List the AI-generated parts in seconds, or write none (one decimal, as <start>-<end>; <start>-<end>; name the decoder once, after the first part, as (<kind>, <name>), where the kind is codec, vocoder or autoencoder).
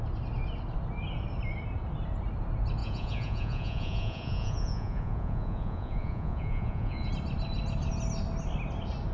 2.8-7.1 (vocoder, Vocos)